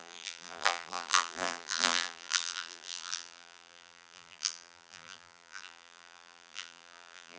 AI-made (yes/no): yes